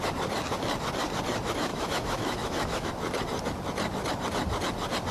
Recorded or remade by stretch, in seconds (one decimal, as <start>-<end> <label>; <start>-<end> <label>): 0.0-1.7 recorded; 1.7-2.9 remade; 2.9-5.1 recorded